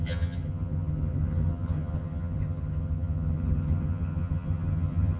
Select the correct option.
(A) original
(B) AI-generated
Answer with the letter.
B